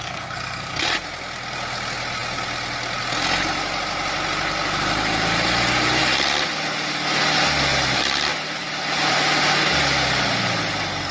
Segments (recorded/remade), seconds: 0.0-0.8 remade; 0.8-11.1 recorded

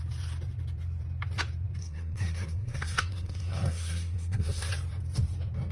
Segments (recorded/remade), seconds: 0.0-1.8 recorded; 1.8-4.7 remade; 4.7-5.7 recorded